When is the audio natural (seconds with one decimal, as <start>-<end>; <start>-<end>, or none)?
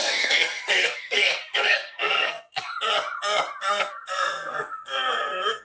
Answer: 2.7-3.6